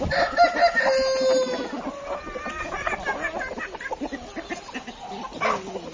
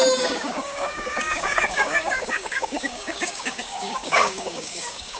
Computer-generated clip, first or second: second